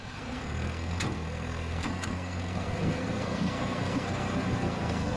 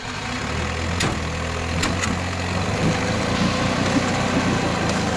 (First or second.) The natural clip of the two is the second